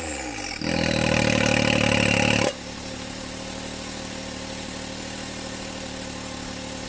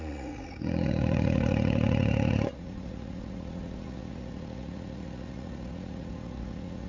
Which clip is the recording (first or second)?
first